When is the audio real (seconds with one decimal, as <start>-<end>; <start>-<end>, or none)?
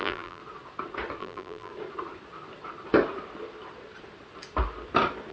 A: 0.4-1.2; 1.7-5.3